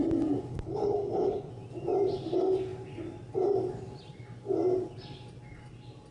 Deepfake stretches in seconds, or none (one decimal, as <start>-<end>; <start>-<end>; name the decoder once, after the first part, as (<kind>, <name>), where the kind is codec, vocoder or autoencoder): 0.5-1.5 (codec, HILCodec)